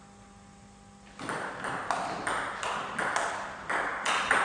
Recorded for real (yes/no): yes